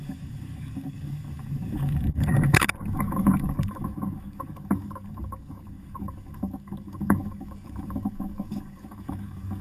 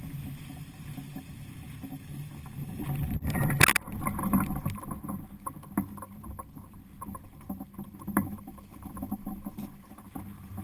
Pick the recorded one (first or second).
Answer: second